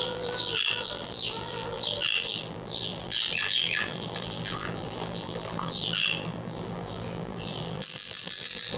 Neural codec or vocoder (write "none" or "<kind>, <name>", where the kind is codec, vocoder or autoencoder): vocoder, BigVGAN v2